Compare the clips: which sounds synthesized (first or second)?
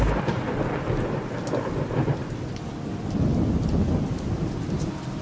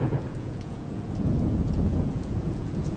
second